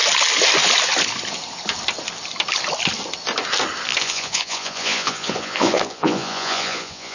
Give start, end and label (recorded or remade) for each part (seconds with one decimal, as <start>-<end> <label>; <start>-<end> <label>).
0.0-4.0 recorded; 4.0-7.1 remade